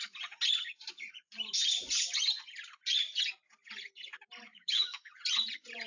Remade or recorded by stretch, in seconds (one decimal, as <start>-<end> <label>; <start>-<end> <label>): 0.0-4.5 recorded; 4.5-5.1 remade; 5.1-5.9 recorded